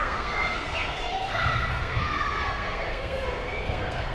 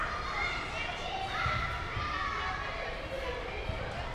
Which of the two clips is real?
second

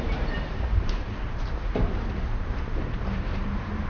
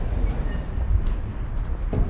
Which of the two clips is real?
second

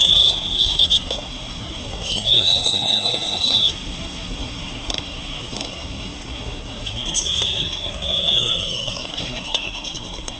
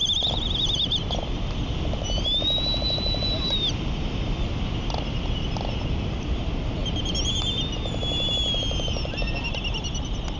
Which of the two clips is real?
second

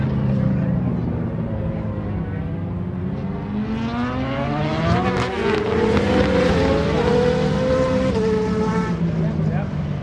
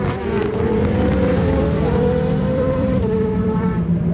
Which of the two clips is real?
first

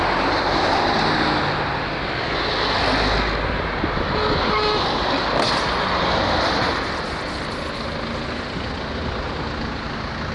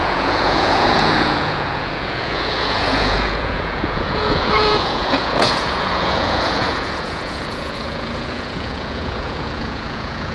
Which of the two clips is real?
first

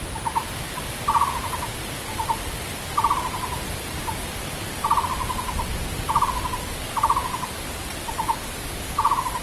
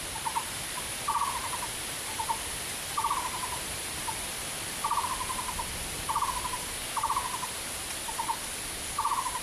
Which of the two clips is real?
first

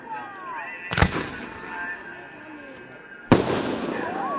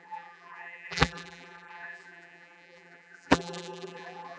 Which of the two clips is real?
first